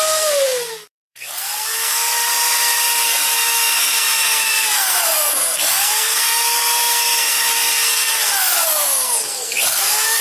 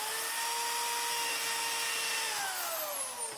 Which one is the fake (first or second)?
first